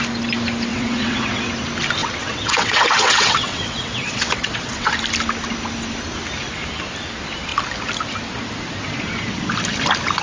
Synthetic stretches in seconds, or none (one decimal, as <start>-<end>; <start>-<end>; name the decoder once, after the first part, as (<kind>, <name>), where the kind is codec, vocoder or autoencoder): 0.7-1.5 (vocoder, WaveNeXt); 2.0-4.9